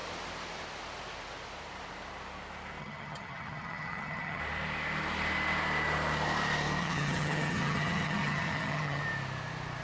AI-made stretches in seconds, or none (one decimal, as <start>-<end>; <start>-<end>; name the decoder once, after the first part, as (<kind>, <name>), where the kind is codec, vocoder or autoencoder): 2.8-4.4 (vocoder, HiFi-GAN); 6.8-9.0